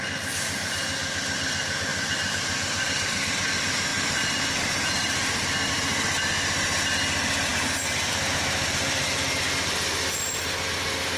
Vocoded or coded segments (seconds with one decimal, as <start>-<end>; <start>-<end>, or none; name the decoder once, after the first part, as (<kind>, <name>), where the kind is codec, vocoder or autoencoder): 1.9-3.2 (vocoder, BigVGAN v2); 3.9-5.7